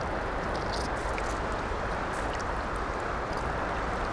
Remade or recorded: recorded